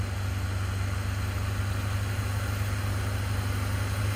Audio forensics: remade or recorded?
recorded